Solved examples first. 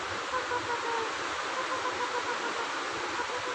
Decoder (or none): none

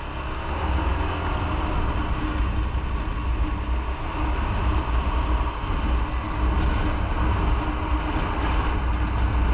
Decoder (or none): none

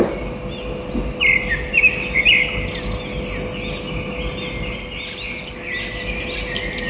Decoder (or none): none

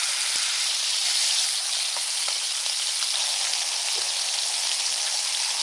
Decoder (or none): none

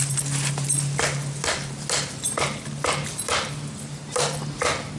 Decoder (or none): none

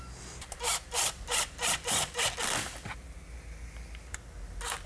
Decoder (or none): none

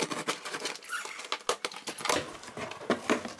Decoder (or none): none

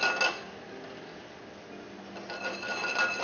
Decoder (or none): none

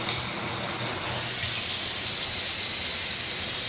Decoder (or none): none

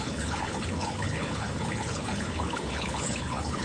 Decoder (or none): codec, HILCodec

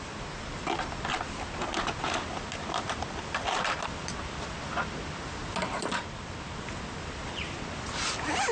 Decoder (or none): none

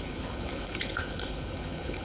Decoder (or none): codec, HILCodec